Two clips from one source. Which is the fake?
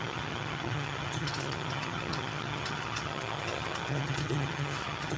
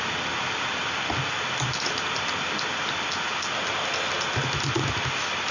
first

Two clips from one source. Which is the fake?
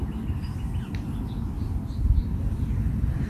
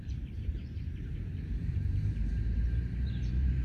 second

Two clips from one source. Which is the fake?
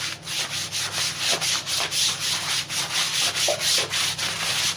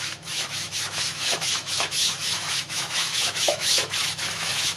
second